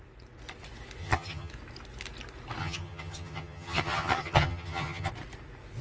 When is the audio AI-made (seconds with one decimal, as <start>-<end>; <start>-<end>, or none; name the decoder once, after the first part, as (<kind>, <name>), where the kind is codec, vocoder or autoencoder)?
1.0-1.5 (vocoder, HiFi-GAN); 2.6-5.1